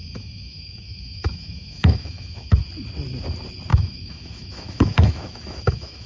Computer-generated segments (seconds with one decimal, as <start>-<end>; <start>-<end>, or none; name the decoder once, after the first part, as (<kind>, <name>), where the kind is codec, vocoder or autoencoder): 0.0-2.6 (autoencoder, DAC-VAE); 3.7-6.1